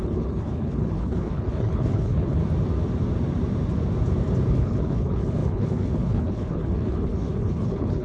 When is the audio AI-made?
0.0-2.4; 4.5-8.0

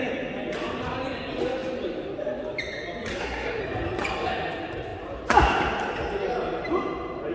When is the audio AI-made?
3.1-3.6

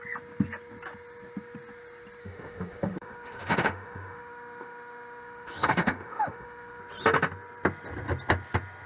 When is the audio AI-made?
2.2-6.8

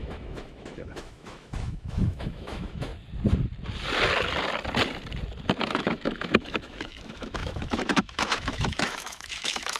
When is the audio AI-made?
0.0-2.9; 5.6-9.8

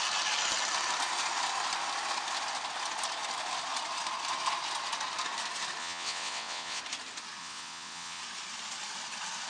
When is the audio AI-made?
5.8-6.8; 7.4-8.2